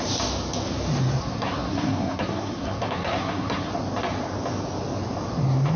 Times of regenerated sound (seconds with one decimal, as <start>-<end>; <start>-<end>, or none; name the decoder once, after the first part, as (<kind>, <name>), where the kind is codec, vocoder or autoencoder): 1.2-3.7 (codec, SNAC)